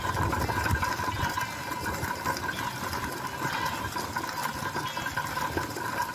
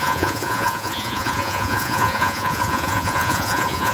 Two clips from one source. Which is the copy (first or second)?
second